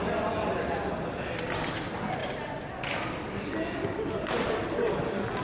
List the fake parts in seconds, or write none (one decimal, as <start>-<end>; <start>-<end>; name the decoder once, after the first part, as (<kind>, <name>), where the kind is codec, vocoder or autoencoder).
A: none